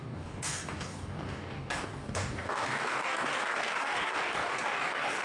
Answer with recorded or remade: remade